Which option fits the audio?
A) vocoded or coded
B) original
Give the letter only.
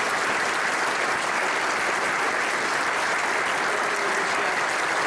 B